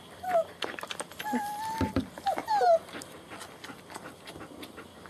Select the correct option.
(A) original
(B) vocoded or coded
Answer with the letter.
A